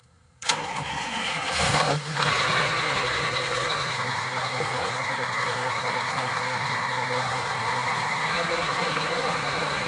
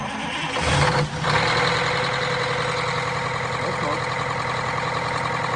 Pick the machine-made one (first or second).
first